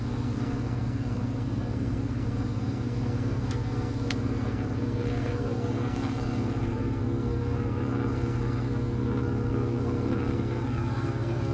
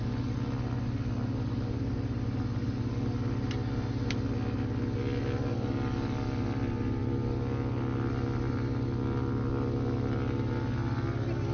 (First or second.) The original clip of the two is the second